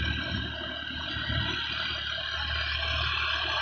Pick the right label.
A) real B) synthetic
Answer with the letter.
A